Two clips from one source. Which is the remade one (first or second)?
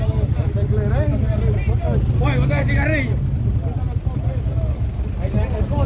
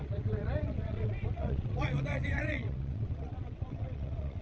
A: second